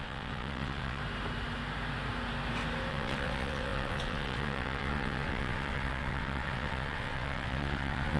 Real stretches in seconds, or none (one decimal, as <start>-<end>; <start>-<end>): 1.0-2.9